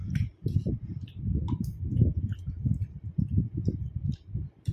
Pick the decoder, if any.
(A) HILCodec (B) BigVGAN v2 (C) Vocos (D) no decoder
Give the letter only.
B